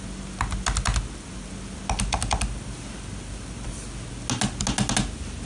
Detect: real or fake real